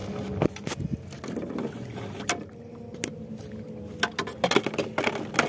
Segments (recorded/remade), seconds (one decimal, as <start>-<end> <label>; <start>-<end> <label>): 0.0-5.5 recorded